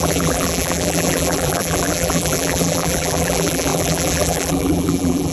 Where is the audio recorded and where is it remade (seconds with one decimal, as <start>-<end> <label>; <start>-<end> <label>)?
0.0-5.3 remade